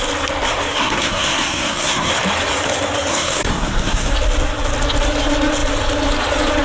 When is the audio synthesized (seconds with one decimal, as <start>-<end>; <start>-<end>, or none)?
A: 0.8-2.1; 3.1-4.1